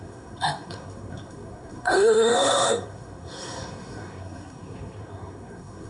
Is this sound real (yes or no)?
no